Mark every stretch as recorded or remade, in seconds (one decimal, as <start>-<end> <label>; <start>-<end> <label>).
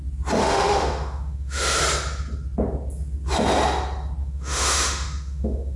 0.0-0.4 recorded; 0.4-1.8 remade; 1.8-4.2 recorded; 4.2-5.8 remade